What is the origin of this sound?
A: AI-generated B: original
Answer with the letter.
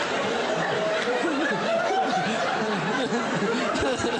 B